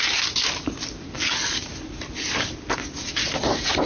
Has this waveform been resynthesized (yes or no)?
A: no